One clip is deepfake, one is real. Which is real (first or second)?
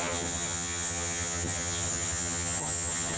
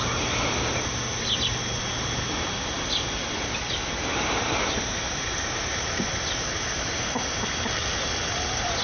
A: second